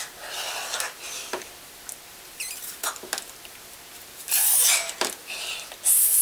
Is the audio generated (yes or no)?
no